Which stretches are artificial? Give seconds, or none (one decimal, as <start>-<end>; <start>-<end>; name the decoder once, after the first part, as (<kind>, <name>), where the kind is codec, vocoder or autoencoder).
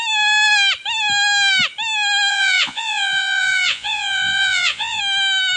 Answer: 2.3-5.0 (vocoder, Vocos)